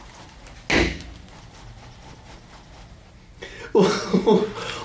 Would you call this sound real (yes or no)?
yes